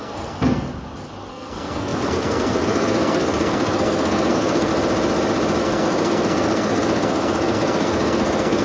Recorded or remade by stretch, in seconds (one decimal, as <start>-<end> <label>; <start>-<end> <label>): 0.0-0.7 remade; 0.7-1.3 recorded; 1.3-4.7 remade; 4.7-5.6 recorded; 5.6-8.6 remade